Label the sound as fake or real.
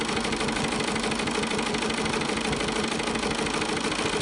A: real